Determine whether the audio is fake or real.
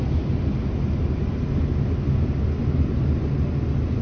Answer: real